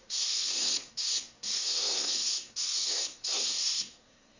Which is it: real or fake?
fake